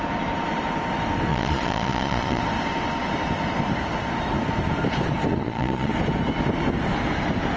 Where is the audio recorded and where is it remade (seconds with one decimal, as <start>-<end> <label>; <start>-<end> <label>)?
0.0-1.3 recorded; 1.3-2.4 remade; 2.4-5.3 recorded; 5.3-5.9 remade; 5.9-7.6 recorded